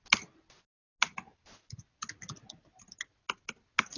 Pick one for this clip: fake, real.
real